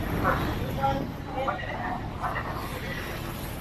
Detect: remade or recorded recorded